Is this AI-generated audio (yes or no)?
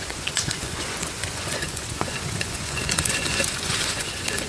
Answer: yes